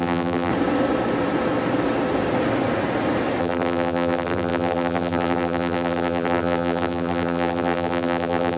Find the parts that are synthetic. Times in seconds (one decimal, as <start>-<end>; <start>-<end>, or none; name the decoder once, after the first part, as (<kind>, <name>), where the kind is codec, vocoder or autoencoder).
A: 0.0-0.5 (vocoder, BigVGAN v2); 3.4-8.6